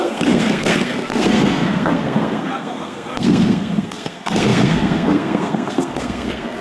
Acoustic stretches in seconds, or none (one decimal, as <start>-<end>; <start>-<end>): none